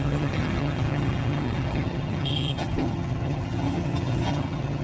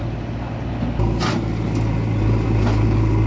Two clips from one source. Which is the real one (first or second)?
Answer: second